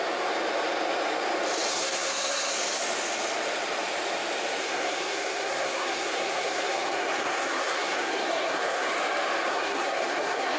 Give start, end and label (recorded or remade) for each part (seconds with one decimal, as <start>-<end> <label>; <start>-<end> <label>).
0.0-1.7 recorded; 1.7-2.5 remade; 2.5-4.6 recorded; 4.6-8.9 remade; 8.9-9.5 recorded; 9.5-10.6 remade